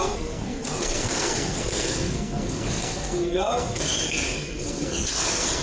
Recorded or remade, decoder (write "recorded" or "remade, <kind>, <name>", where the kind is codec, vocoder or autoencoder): remade, codec, SNAC